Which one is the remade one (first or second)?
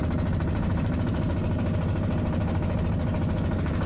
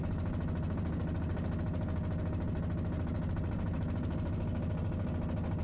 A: first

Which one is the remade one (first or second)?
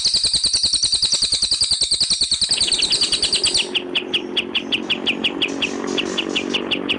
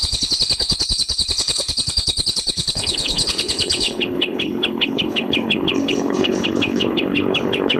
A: second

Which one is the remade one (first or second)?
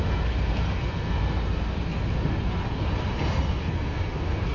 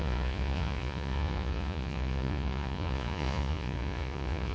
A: second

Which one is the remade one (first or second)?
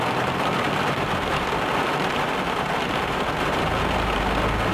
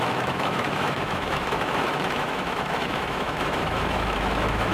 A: second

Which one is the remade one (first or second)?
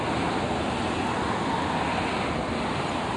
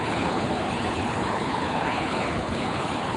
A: second